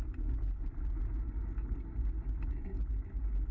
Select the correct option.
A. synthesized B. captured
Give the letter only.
B